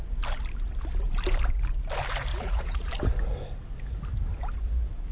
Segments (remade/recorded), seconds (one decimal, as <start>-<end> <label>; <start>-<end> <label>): 0.0-2.3 recorded; 2.3-2.9 remade; 2.9-5.1 recorded